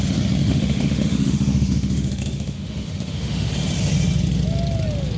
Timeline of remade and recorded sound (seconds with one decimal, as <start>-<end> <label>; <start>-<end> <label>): 0.0-0.4 recorded; 0.4-3.5 remade; 3.5-5.2 recorded